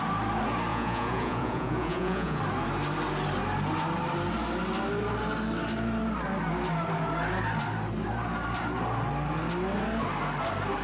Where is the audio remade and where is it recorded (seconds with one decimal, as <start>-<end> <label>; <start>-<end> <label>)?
0.0-0.7 recorded; 0.7-2.4 remade; 2.4-10.8 recorded